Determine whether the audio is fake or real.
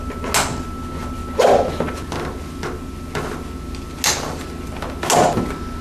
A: real